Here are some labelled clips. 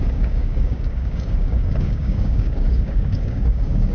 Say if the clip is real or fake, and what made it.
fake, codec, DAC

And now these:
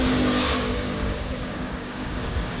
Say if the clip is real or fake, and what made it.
fake, codec, DAC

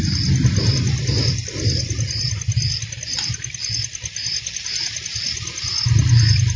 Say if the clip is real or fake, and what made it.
real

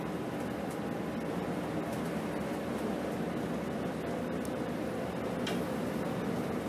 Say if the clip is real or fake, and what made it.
real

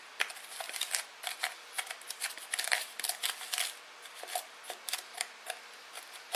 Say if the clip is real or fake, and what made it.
real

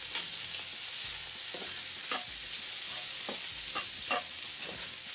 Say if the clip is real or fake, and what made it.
real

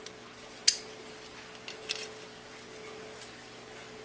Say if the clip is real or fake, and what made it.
real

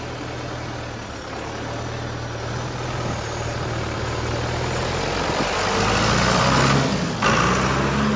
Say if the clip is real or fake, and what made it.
real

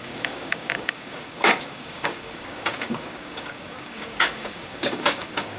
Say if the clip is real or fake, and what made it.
fake, codec, DAC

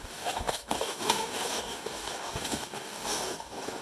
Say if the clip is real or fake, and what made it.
fake, codec, DAC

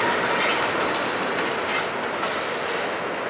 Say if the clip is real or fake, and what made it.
real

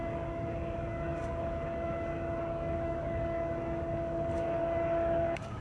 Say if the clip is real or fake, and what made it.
fake, codec, DAC